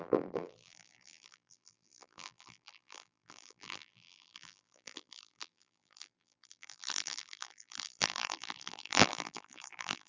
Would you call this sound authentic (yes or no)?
no